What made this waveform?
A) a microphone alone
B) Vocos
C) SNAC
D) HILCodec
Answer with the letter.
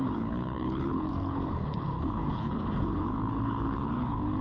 D